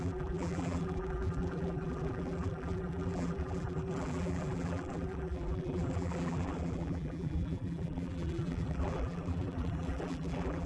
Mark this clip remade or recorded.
remade